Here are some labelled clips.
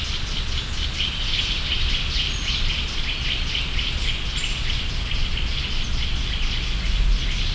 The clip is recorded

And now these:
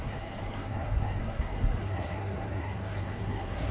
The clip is remade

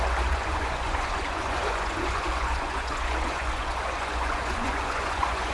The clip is remade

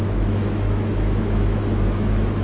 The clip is remade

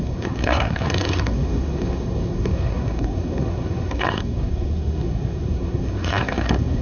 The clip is remade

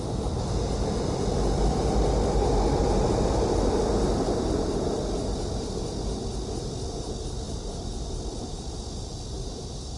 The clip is recorded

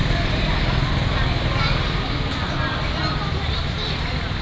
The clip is recorded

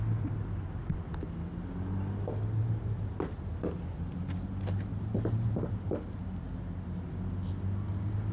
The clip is recorded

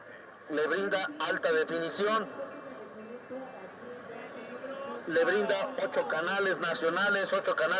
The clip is recorded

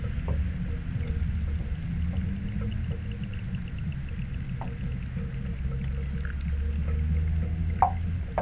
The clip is recorded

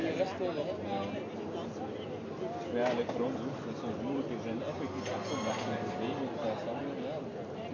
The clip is recorded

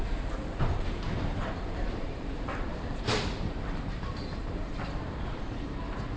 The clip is remade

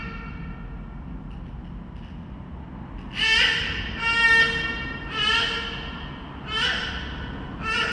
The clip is recorded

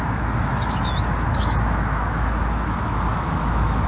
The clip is remade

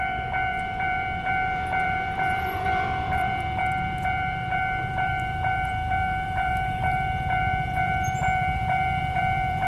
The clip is remade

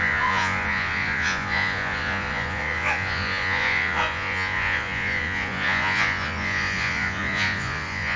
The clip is remade